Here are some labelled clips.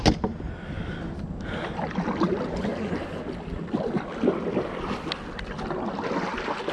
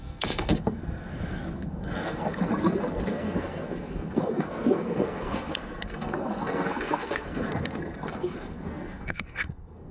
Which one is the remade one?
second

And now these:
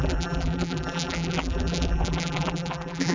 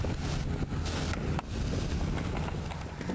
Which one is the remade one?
first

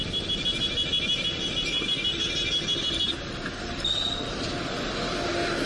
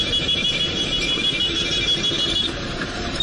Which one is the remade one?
second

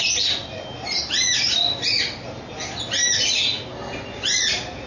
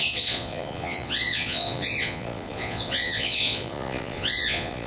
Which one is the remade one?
second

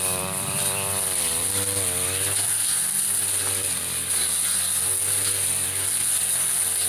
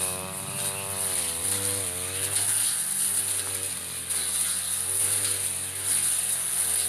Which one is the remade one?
first